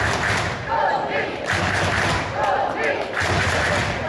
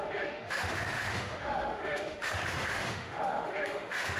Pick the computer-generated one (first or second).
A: second